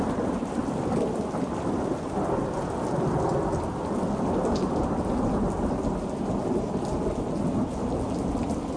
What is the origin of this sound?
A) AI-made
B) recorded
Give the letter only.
B